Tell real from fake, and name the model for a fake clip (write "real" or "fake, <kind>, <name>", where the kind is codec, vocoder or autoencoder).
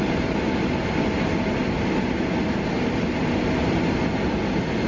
real